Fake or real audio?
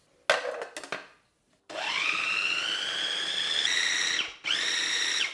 real